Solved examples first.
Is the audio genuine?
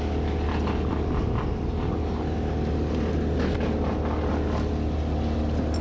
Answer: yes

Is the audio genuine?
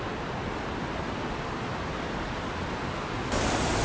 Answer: yes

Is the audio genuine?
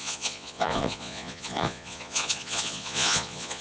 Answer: no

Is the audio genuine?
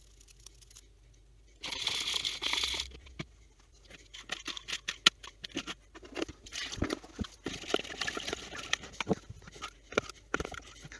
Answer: yes